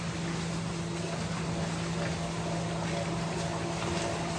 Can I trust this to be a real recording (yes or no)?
yes